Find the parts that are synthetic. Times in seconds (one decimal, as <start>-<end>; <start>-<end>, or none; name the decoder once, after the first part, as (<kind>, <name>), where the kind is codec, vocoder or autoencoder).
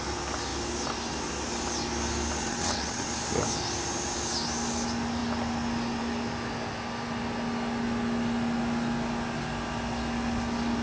2.4-3.1 (vocoder, WaveNeXt)